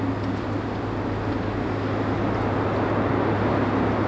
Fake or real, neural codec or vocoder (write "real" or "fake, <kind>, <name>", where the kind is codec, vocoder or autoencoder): real